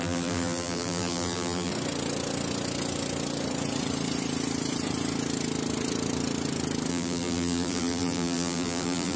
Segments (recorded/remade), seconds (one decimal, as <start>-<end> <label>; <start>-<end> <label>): 0.0-1.7 remade; 1.7-6.9 recorded; 6.9-9.2 remade